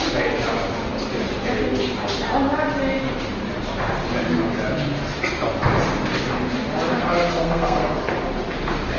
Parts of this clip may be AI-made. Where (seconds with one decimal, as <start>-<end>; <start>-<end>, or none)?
7.0-8.0